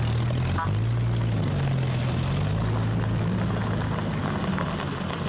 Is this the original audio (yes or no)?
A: yes